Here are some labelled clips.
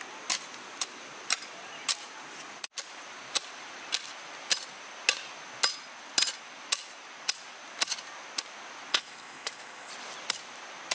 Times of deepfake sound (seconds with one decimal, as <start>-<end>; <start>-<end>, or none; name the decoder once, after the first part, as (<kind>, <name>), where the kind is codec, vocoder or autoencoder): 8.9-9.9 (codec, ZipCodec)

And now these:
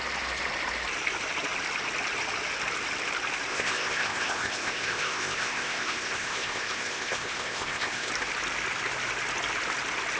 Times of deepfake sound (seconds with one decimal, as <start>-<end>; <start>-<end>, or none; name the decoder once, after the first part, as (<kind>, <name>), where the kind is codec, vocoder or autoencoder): 3.5-8.1 (codec, ZipCodec)

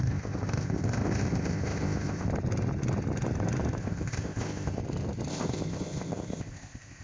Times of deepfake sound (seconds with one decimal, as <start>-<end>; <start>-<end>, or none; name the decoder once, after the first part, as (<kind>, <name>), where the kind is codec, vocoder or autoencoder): 0.0-2.3 (codec, ZipCodec); 3.8-4.8; 5.3-7.0

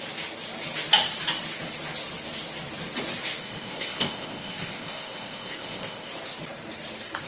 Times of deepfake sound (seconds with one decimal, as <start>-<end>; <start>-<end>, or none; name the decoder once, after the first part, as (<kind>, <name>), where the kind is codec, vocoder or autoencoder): 3.4-6.1 (codec, ZipCodec)